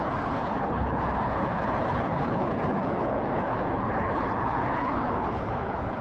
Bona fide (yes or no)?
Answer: no